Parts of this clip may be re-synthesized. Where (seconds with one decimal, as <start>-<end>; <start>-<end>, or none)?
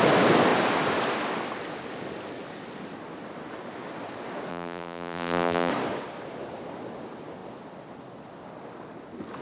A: 4.5-5.7